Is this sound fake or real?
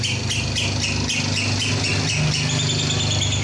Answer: real